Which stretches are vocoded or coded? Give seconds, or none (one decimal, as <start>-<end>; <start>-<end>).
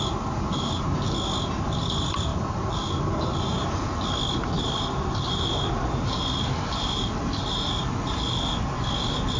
none